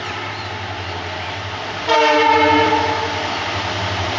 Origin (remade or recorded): recorded